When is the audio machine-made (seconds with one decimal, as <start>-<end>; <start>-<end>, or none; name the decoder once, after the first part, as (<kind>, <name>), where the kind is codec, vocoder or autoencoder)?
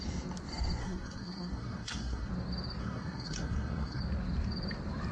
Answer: 0.8-2.3 (codec, SNAC); 2.8-4.0